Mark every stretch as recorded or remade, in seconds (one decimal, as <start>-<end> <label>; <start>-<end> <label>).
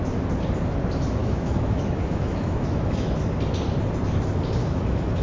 0.0-1.2 recorded; 1.2-3.1 remade; 3.1-4.6 recorded; 4.6-5.2 remade